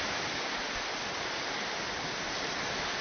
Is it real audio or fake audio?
real